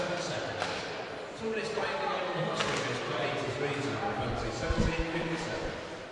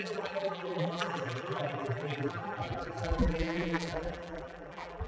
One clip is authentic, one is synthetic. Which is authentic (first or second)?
first